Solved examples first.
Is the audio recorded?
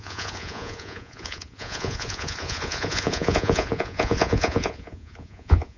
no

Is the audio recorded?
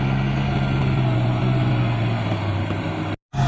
yes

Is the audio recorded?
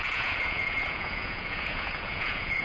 no